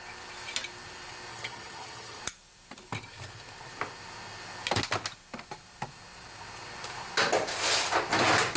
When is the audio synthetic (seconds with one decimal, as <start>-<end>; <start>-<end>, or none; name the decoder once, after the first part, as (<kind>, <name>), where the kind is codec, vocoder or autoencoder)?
1.3-2.2 (vocoder, HiFi-GAN)